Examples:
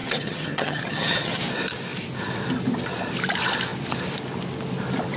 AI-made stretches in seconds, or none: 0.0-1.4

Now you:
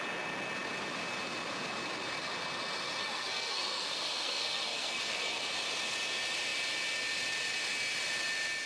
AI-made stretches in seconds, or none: 3.0-5.4

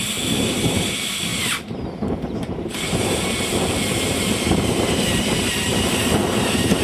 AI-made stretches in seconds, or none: 0.0-1.3; 2.5-3.5; 4.1-6.8

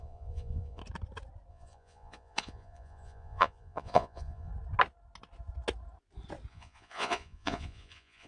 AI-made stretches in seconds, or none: 0.0-0.8; 1.5-4.5; 6.5-8.3

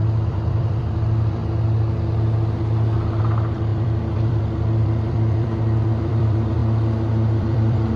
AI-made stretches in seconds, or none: 0.0-1.4; 3.2-6.6; 7.4-8.0

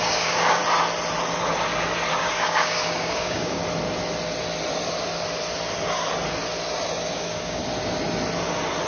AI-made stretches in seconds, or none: 0.0-0.6; 2.1-3.6; 7.1-7.6

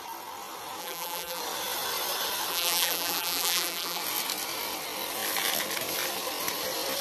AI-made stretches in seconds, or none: 0.8-1.4; 2.5-4.0

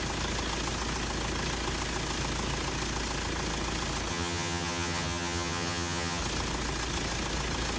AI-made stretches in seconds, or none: 4.1-6.2